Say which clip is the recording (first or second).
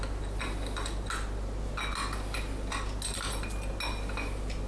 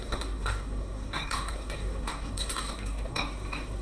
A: first